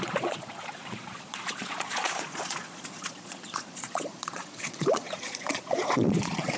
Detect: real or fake fake